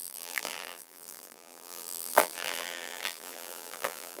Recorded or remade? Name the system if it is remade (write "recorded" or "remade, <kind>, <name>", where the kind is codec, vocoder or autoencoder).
remade, vocoder, BigVGAN v2